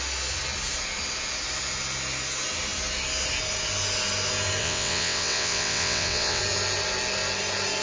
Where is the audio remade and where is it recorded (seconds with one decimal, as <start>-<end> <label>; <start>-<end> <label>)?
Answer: 0.0-4.6 recorded; 4.6-6.4 remade; 6.4-7.8 recorded